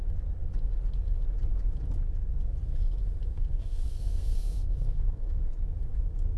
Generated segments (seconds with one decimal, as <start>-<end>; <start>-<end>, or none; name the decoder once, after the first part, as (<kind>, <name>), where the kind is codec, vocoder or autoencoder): 3.3-5.4 (codec, SNAC)